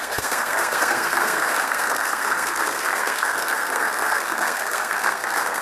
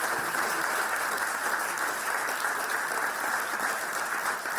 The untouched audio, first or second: second